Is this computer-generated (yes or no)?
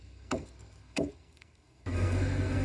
yes